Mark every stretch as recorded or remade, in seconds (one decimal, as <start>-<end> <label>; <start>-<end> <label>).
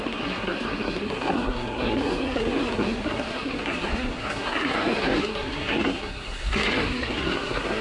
0.0-7.8 remade